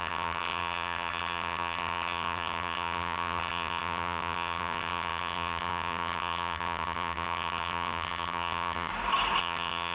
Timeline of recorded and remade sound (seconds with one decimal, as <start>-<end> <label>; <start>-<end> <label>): 0.0-8.9 remade; 8.9-9.4 recorded; 9.4-9.9 remade